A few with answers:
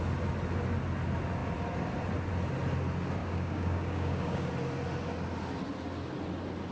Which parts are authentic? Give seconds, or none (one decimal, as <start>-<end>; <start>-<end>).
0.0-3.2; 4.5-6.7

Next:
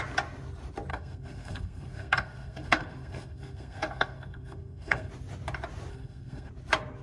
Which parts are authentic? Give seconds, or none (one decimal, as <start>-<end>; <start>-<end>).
0.0-0.9; 5.1-5.9; 6.5-7.0

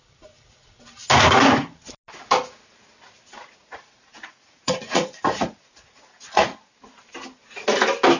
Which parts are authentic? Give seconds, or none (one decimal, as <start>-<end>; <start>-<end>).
0.0-3.4; 6.5-8.2